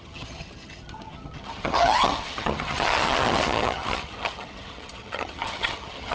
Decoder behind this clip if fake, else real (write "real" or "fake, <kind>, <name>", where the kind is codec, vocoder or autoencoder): fake, vocoder, HiFi-GAN